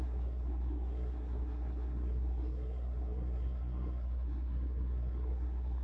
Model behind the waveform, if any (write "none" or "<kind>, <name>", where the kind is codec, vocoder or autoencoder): codec, SNAC